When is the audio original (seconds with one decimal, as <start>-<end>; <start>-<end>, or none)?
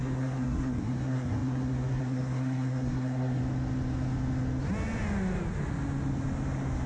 3.4-6.9